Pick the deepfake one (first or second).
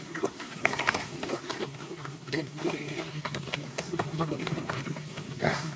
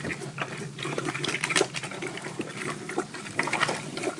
first